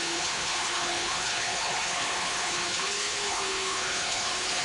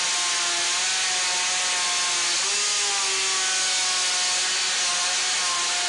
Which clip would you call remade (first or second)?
first